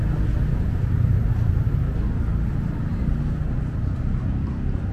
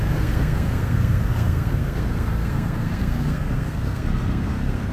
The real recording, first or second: first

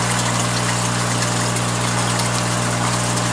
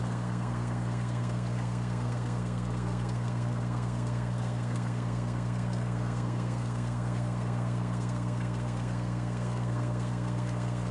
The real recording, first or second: first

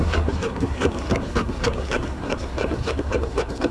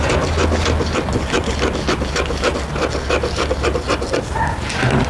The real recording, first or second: second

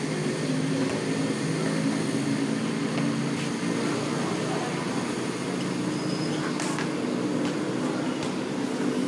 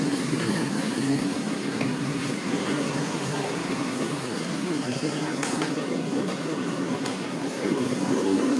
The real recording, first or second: first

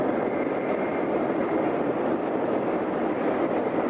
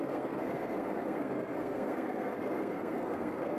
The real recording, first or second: first